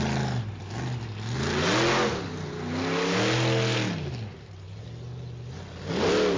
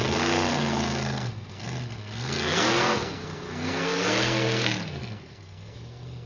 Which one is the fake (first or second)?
second